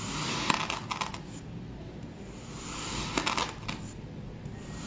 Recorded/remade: recorded